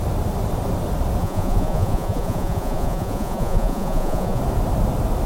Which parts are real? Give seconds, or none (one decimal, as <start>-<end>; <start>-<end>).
0.0-1.2; 4.4-5.3